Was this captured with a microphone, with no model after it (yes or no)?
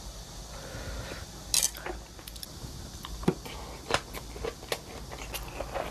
yes